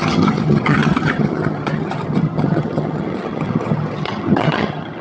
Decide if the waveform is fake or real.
fake